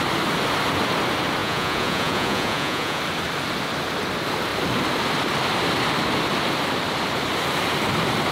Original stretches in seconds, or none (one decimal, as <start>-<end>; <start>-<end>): 0.0-1.4; 3.0-8.3